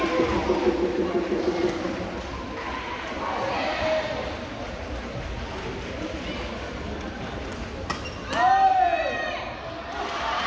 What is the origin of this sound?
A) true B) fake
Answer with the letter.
A